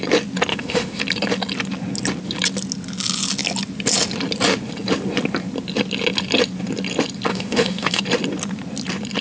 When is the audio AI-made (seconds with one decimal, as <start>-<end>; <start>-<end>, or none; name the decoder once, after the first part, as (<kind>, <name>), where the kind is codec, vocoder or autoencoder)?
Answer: 0.5-1.0 (autoencoder, DAC-VAE); 7.3-8.0